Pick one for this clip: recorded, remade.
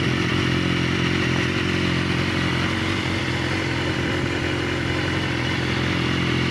recorded